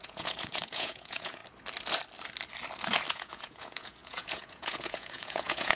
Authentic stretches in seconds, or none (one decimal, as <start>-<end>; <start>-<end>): 1.4-3.1